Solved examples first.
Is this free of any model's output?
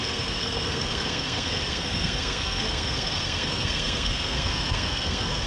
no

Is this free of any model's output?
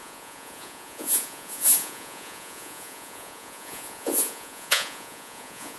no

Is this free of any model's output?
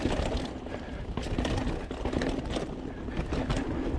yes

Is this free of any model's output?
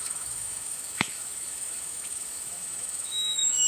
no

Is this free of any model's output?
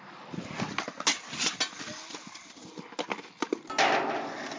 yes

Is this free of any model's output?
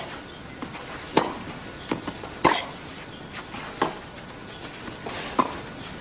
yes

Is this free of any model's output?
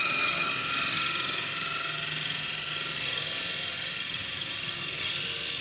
yes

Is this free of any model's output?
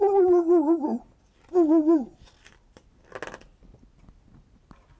yes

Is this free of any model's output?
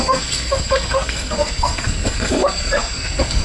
no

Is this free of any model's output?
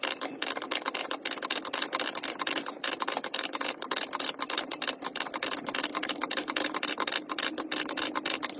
no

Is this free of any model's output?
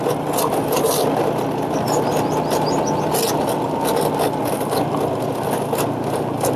yes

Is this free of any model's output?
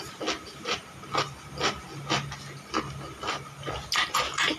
yes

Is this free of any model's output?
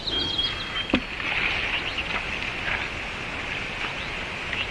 yes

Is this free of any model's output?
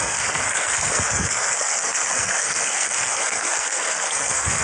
no